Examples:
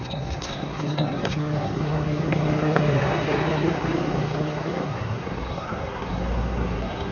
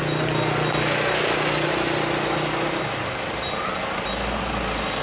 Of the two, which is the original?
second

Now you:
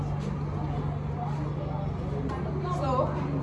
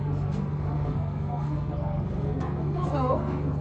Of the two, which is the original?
first